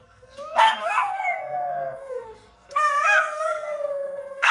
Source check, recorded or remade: remade